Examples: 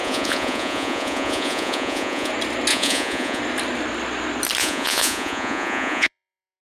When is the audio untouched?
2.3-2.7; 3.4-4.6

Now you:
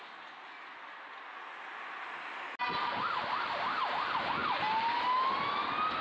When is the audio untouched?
0.0-6.0

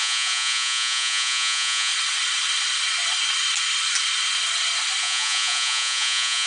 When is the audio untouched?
1.9-5.0

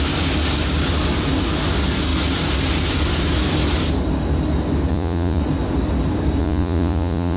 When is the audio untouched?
0.0-4.9; 5.4-6.4

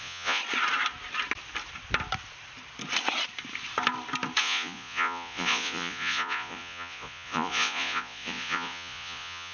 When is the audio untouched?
0.4-4.4

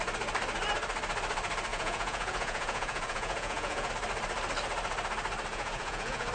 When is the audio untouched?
0.0-1.7; 3.9-5.5

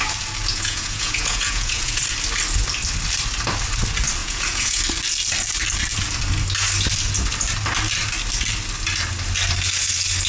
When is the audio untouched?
0.0-0.5; 2.0-4.2; 4.8-10.3

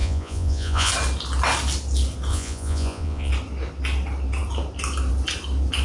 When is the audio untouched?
0.9-2.3; 3.3-5.8